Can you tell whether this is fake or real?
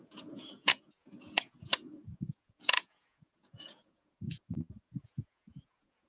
fake